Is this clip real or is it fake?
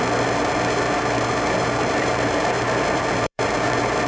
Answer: fake